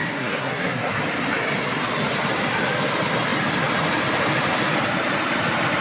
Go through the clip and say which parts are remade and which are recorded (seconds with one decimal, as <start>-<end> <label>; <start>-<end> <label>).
0.0-1.0 remade; 1.0-5.8 recorded